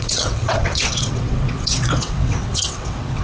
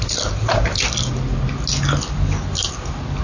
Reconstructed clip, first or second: first